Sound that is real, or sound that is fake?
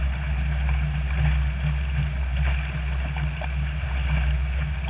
real